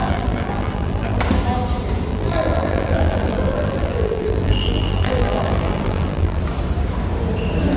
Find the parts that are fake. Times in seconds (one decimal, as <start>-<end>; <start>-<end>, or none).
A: 0.0-1.2; 2.1-6.4